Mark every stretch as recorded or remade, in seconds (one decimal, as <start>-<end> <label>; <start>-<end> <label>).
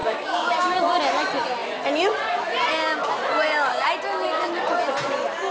0.0-0.8 remade; 0.8-5.5 recorded